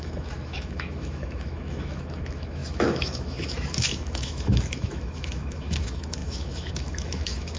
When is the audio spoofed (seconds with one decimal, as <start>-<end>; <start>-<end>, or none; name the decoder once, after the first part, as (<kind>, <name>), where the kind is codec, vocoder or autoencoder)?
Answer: 0.0-7.6 (autoencoder, DAC-VAE)